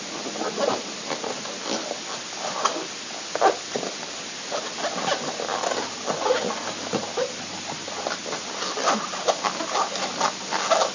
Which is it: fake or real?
real